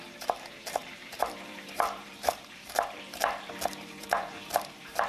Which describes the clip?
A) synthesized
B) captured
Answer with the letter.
A